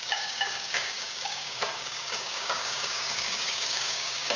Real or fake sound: fake